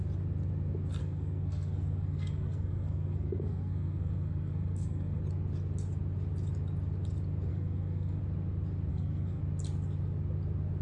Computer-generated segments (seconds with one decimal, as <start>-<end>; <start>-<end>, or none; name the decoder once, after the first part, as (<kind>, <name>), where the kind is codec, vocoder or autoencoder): 1.0-5.2 (codec, SNAC); 7.5-8.2; 8.9-9.4